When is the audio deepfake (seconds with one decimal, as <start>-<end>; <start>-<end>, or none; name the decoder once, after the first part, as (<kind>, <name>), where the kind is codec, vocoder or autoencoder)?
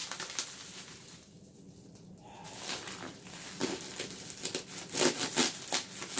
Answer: none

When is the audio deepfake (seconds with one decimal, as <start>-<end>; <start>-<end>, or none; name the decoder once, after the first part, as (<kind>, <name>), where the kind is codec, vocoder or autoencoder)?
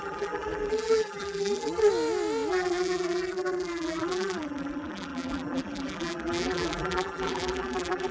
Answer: 0.0-1.9 (vocoder, BigVGAN v2); 2.5-8.1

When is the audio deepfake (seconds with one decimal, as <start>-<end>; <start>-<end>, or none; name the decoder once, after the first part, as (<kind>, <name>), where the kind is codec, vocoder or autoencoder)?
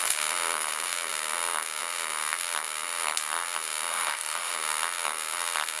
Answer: 3.9-4.5 (autoencoder, DAC-VAE)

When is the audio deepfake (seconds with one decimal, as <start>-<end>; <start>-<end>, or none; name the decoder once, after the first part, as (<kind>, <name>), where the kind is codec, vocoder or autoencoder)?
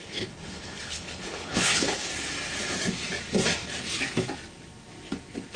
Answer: 0.0-2.1 (codec, HILCodec)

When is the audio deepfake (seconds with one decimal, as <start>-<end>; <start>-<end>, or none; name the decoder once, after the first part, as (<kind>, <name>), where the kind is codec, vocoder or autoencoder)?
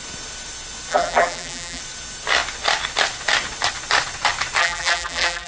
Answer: 0.9-1.8 (vocoder, BigVGAN v2); 4.6-5.5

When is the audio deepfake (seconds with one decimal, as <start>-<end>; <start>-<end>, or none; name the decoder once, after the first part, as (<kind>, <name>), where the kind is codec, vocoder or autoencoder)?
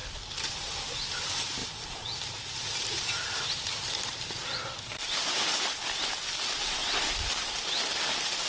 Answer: 0.0-0.7 (vocoder, BigVGAN v2); 1.6-5.8; 6.8-7.4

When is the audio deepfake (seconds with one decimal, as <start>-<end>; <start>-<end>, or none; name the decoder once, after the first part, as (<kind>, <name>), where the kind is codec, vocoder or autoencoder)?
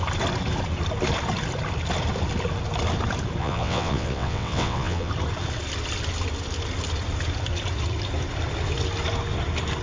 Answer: 3.4-5.1 (vocoder, WaveNeXt)